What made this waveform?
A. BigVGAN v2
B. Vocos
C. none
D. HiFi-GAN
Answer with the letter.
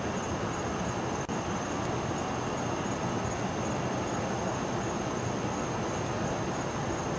C